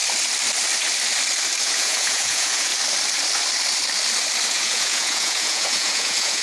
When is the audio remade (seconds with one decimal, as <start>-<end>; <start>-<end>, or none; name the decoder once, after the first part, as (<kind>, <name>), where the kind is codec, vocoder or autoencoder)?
1.6-2.7 (vocoder, Vocos); 4.5-6.4